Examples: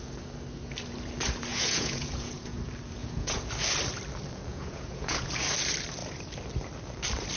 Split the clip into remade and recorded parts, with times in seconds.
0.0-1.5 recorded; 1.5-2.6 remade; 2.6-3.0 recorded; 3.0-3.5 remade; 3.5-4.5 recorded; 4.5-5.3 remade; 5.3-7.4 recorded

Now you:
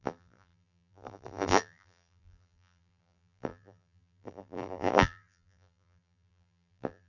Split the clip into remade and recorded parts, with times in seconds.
0.0-7.1 remade